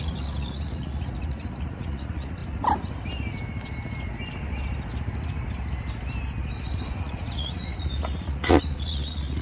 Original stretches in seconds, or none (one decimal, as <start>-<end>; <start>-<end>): 2.4-7.0